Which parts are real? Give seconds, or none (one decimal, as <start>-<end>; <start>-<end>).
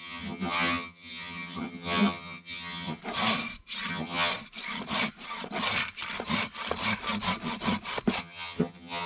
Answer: 3.0-3.9; 4.3-8.2